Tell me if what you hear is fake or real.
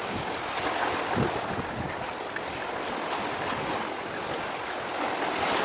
real